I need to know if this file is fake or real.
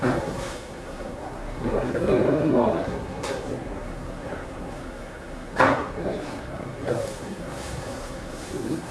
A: fake